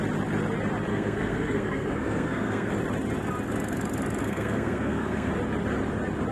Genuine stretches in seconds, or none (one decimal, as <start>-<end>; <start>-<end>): 0.0-0.9; 2.7-4.2; 5.3-6.3